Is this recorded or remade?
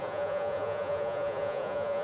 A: remade